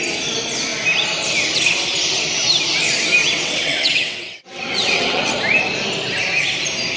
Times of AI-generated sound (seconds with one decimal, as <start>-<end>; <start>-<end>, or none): 3.2-5.3